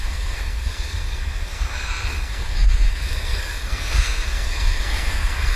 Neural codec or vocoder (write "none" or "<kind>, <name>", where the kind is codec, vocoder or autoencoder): codec, SNAC